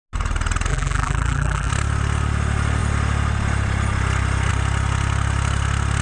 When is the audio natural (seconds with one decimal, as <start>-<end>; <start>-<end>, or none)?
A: 0.0-0.7; 1.7-6.0